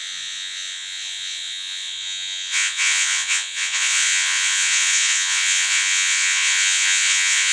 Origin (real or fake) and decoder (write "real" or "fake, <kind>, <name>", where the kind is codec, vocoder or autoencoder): fake, vocoder, Vocos